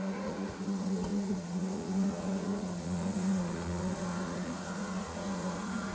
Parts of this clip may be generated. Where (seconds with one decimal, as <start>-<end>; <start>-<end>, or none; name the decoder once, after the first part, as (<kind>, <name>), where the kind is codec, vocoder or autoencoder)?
0.0-5.9 (vocoder, Vocos)

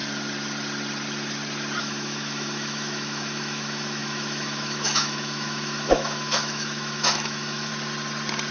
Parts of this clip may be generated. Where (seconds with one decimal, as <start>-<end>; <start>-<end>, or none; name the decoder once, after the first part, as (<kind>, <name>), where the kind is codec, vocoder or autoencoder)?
1.8-7.7 (autoencoder, DAC-VAE)

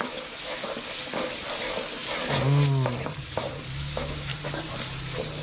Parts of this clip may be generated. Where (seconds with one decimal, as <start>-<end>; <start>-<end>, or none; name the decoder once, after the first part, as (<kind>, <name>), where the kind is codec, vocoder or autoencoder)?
0.0-0.6 (autoencoder, DAC-VAE); 3.8-4.3

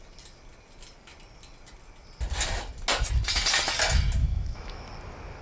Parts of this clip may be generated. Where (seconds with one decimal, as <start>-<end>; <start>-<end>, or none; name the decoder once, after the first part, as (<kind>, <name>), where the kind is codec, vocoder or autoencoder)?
4.2-4.9 (autoencoder, DAC-VAE)

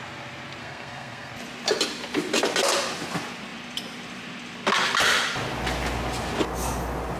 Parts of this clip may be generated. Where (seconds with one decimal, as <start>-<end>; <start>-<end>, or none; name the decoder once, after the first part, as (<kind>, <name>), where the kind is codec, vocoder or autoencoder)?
0.6-1.3 (codec, SNAC)

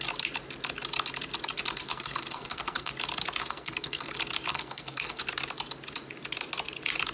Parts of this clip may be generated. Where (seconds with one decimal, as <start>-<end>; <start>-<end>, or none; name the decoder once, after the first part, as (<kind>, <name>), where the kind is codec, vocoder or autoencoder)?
1.7-2.9 (codec, SNAC); 3.4-4.1; 4.5-5.2

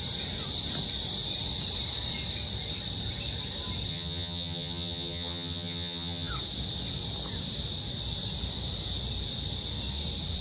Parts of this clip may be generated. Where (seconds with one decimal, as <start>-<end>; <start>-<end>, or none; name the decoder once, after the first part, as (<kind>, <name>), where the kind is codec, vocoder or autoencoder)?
3.9-6.3 (vocoder, HiFi-GAN)

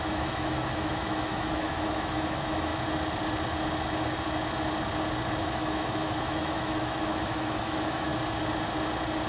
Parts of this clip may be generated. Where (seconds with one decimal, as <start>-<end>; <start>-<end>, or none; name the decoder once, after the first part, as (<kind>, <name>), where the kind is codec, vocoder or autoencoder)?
0.0-2.7 (autoencoder, DAC-VAE); 5.4-8.1